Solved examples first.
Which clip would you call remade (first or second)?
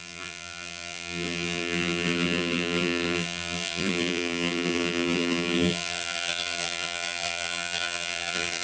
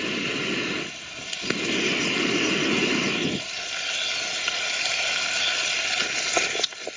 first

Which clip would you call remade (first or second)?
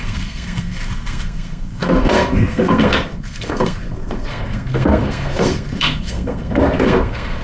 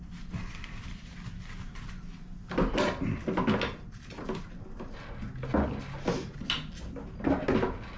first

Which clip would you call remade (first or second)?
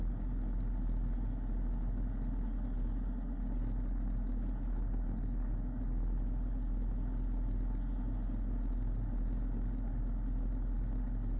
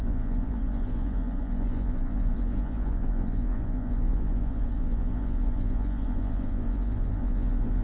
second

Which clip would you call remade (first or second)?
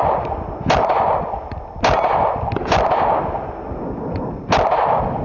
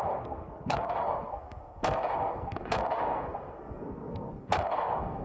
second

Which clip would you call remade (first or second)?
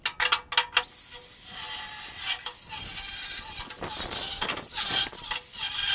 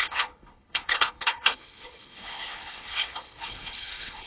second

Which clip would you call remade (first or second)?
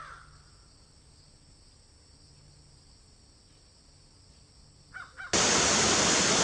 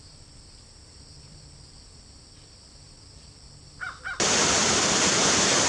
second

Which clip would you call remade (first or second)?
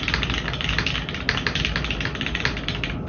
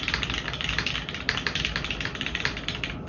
second